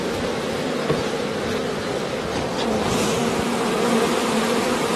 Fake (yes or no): no